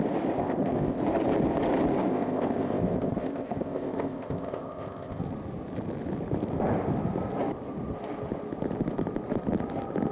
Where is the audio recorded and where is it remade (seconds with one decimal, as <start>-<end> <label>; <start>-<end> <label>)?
0.0-0.4 recorded; 0.4-1.0 remade; 1.0-2.1 recorded; 2.1-5.2 remade; 5.2-10.1 recorded